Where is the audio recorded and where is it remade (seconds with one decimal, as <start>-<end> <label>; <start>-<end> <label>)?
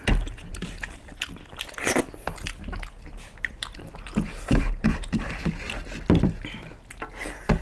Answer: 0.0-7.6 recorded